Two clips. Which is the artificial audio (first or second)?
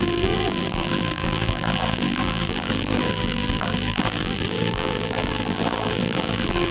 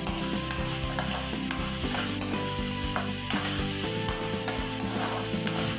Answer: first